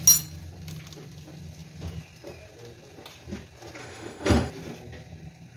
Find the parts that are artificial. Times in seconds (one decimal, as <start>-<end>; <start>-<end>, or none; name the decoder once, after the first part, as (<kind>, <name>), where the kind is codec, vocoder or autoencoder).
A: 3.8-4.5 (autoencoder, DAC-VAE)